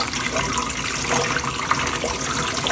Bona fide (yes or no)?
yes